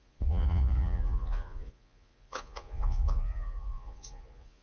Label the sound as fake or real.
fake